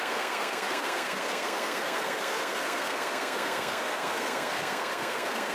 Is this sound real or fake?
fake